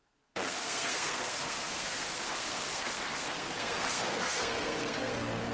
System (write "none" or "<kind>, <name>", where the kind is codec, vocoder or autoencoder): codec, SNAC